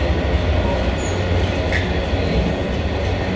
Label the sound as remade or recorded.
recorded